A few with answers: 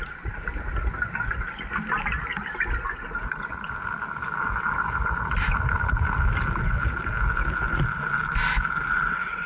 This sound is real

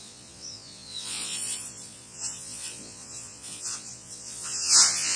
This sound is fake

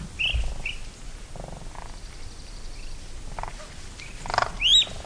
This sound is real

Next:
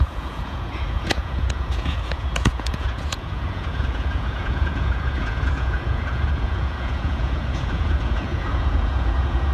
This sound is fake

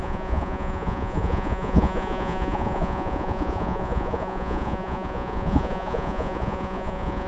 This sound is fake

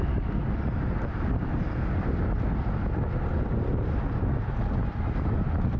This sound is real